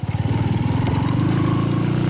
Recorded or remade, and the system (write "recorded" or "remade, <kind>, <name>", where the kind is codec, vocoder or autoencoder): recorded